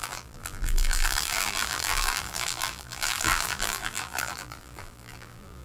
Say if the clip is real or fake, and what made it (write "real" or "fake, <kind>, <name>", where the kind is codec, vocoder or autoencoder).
fake, vocoder, BigVGAN v2